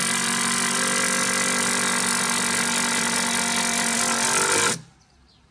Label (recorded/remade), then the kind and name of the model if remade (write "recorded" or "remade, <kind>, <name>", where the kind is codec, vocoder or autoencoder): recorded